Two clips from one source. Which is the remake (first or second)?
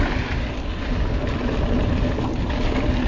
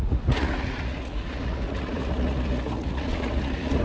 second